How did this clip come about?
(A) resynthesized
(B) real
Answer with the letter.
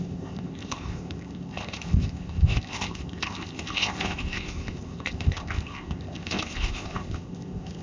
A